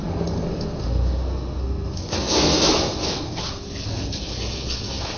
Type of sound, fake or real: fake